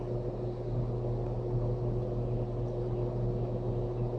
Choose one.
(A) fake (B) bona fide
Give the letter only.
B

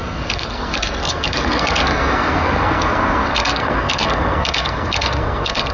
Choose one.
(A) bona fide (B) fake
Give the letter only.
B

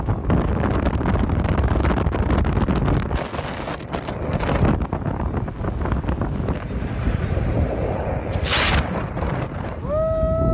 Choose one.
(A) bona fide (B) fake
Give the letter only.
A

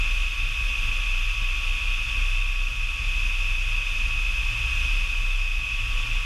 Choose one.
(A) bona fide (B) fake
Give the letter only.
A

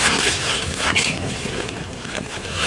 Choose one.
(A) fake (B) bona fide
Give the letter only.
A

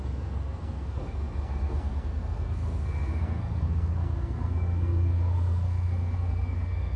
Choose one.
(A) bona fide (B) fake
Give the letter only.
B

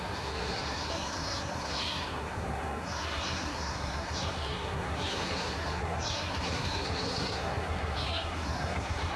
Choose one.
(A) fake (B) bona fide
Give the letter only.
A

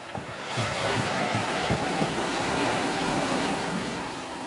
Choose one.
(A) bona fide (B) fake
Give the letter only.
B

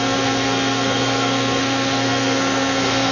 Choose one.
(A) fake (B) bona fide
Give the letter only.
A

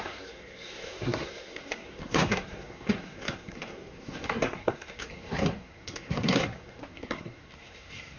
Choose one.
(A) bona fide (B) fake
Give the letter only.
B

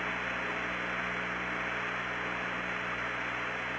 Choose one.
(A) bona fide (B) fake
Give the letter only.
A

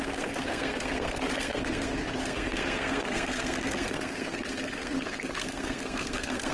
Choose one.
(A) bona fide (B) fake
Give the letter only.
B